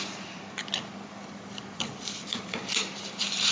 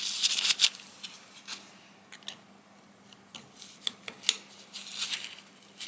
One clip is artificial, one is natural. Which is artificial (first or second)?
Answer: first